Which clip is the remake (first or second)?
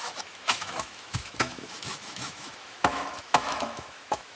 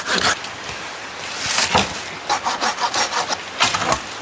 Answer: first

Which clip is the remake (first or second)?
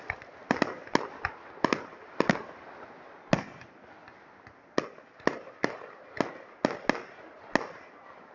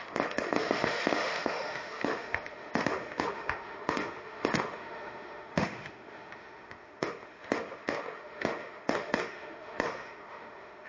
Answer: second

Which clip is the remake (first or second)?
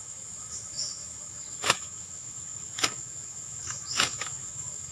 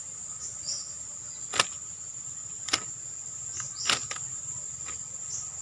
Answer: first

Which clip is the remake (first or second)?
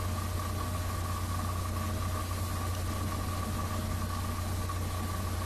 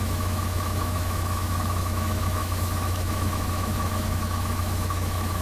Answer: second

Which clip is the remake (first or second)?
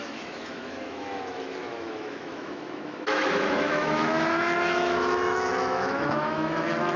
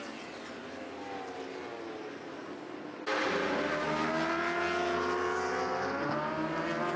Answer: first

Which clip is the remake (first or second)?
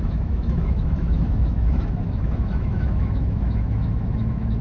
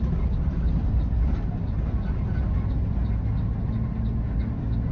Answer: first